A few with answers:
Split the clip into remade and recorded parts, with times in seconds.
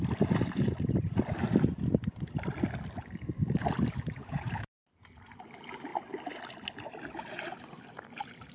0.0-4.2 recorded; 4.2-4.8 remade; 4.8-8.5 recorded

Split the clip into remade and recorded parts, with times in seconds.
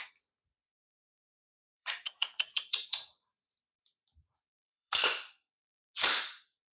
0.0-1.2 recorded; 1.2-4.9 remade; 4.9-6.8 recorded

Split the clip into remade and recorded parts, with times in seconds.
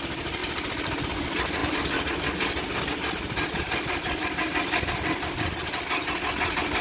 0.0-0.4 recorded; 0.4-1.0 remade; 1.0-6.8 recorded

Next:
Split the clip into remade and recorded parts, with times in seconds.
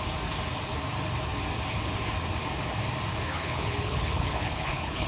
0.0-3.1 recorded; 3.1-5.1 remade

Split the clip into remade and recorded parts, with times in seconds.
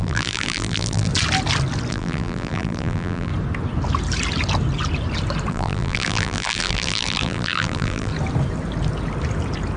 0.0-1.1 remade; 1.1-1.9 recorded; 1.9-3.3 remade; 3.3-5.5 recorded; 5.5-8.1 remade; 8.1-9.8 recorded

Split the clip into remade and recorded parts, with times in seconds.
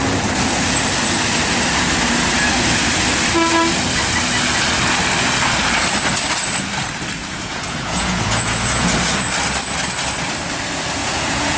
0.0-7.2 recorded; 7.2-8.9 remade; 8.9-11.0 recorded; 11.0-11.6 remade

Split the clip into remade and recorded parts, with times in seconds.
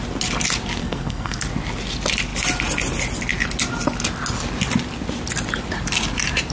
0.0-0.8 recorded; 0.8-1.4 remade; 1.4-6.5 recorded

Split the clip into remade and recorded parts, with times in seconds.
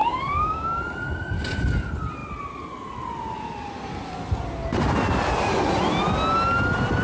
0.0-0.8 remade; 0.8-7.0 recorded